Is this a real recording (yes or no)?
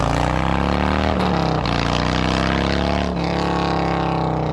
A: yes